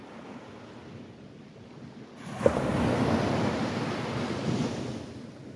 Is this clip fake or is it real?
real